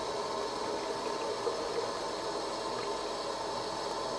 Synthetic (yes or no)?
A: no